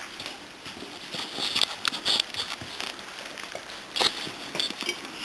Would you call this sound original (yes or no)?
yes